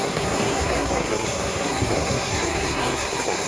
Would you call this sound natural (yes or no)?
no